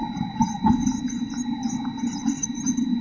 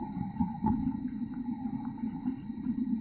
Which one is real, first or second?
first